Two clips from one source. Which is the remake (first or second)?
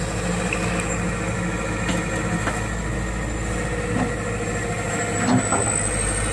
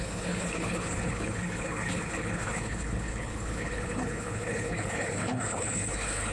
second